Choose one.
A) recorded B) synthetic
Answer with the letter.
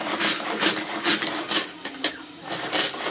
A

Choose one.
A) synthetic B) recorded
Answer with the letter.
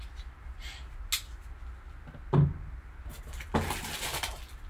B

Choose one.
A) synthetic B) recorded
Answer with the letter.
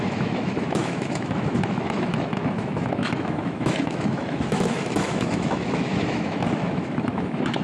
A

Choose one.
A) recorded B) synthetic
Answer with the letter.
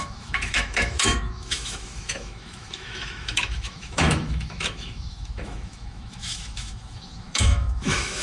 B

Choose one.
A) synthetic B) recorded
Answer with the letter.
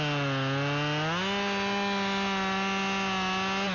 B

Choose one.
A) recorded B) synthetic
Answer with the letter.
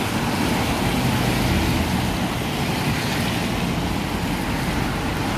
A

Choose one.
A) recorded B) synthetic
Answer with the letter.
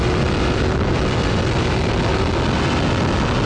A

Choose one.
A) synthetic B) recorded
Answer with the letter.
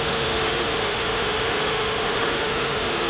A